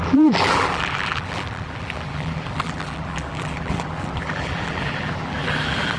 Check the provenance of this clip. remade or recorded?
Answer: remade